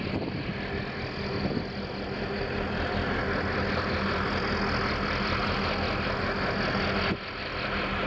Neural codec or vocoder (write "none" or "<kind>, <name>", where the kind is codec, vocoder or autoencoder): none